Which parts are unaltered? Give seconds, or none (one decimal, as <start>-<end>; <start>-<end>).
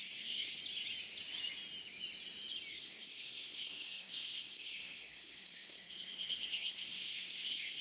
0.6-2.7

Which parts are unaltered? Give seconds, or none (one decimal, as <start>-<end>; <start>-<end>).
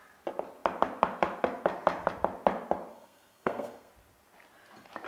0.0-2.9; 3.9-5.1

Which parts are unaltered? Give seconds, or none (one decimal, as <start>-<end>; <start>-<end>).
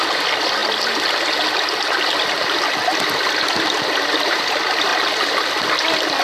0.0-6.2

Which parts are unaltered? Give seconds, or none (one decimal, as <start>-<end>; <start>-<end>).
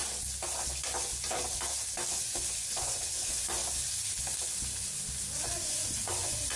0.0-2.1; 3.6-5.4